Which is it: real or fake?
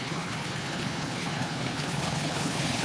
fake